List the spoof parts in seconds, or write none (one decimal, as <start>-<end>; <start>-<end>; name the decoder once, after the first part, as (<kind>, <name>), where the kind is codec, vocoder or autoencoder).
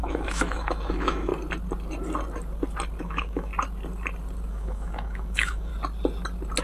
0.0-1.3 (autoencoder, DAC-VAE); 3.0-3.5; 4.5-5.7